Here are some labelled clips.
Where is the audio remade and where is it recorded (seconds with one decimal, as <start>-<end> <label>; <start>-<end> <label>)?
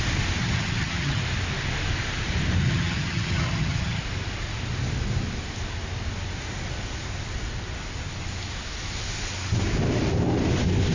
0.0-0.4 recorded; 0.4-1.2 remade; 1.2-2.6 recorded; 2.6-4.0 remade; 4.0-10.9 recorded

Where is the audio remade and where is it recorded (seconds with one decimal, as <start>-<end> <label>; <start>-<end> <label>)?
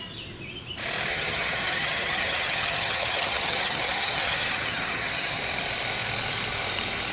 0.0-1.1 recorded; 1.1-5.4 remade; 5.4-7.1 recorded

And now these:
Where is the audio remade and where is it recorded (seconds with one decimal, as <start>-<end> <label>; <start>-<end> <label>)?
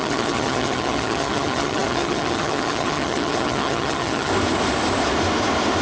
0.0-4.3 remade; 4.3-5.8 recorded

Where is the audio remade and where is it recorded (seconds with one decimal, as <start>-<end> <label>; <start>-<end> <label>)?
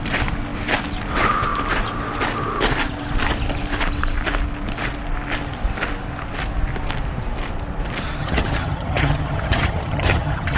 0.0-8.2 recorded; 8.2-10.6 remade